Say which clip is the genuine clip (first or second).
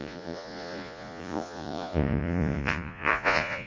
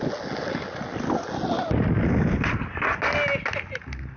second